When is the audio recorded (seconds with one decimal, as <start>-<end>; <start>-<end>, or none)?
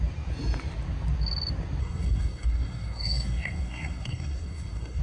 0.0-1.8